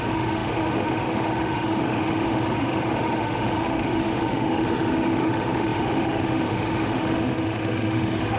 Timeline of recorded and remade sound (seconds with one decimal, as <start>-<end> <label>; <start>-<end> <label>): 0.0-8.4 remade